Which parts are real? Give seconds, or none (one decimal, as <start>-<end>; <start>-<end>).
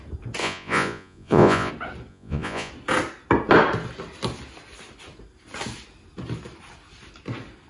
0.0-0.4; 1.7-2.1; 2.7-7.7